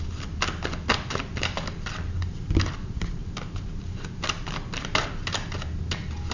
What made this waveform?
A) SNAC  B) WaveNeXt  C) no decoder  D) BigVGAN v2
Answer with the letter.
C